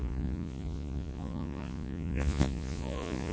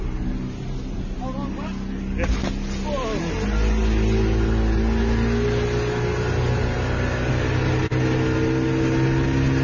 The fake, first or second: first